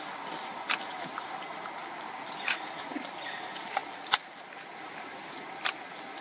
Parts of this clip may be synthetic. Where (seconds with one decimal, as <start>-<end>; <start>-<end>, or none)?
none